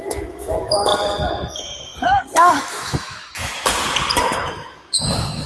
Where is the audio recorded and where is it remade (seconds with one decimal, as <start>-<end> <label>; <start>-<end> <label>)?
0.0-0.9 remade; 0.9-1.5 recorded; 1.5-1.9 remade; 1.9-2.5 recorded; 2.5-3.5 remade; 3.5-4.2 recorded; 4.2-5.5 remade